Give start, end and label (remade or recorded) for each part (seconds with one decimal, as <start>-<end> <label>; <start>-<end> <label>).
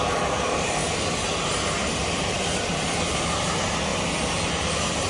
0.0-0.8 remade; 0.8-1.4 recorded; 1.4-3.9 remade; 3.9-4.5 recorded; 4.5-5.1 remade